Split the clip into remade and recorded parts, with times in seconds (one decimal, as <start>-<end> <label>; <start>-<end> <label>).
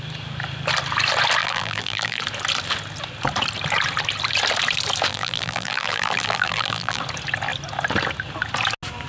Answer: 0.0-1.4 recorded; 1.4-2.2 remade; 2.2-5.1 recorded; 5.1-7.0 remade; 7.0-9.1 recorded